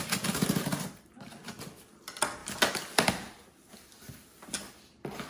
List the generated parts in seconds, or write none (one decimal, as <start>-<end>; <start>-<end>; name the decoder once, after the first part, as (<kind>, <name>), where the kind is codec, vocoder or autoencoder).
none